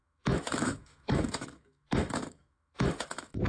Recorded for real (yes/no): no